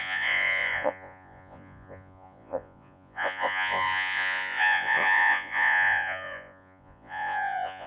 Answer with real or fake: fake